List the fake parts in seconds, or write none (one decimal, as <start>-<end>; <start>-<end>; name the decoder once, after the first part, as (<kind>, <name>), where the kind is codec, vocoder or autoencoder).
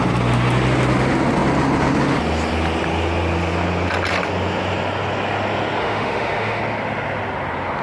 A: 5.8-6.6 (autoencoder, DAC-VAE)